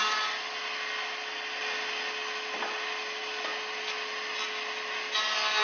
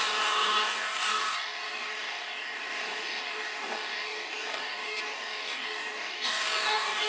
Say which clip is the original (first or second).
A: first